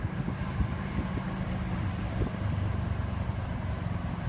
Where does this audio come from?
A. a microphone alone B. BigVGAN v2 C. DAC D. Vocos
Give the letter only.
A